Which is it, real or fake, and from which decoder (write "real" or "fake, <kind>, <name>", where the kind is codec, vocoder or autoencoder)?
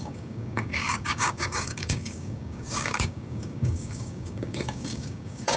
fake, codec, DAC